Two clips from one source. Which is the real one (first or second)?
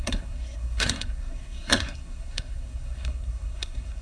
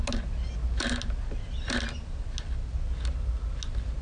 second